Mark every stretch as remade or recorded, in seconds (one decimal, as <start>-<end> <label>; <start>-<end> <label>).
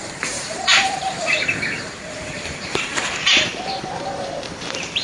0.0-5.0 remade